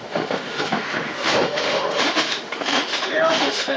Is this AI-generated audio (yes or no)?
yes